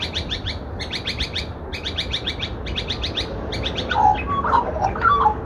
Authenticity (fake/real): real